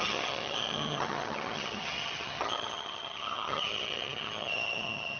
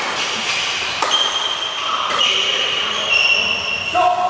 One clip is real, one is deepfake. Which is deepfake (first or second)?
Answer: first